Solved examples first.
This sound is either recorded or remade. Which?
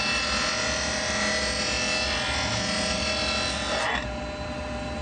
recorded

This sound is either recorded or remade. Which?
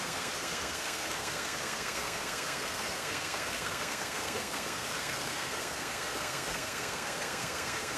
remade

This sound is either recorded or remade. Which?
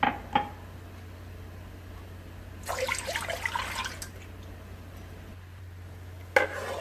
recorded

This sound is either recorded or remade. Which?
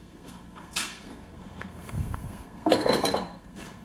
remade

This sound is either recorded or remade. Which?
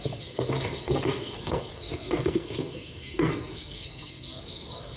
remade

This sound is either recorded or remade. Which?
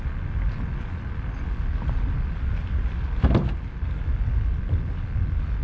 recorded